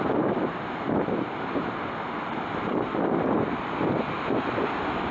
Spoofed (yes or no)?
no